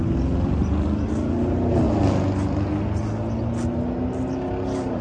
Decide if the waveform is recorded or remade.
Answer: recorded